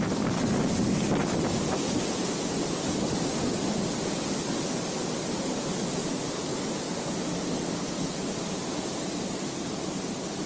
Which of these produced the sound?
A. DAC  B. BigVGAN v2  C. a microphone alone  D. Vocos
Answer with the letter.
C